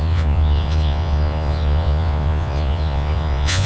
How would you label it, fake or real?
fake